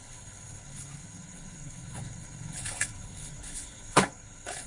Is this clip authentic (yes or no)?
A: no